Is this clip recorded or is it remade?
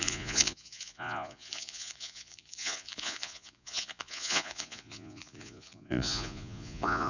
remade